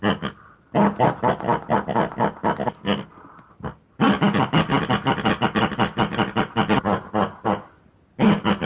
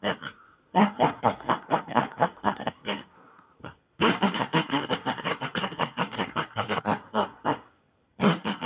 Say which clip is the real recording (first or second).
first